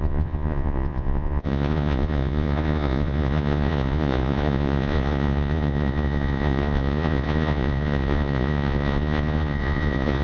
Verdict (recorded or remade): remade